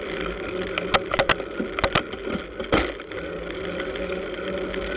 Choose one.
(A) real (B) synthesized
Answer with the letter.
A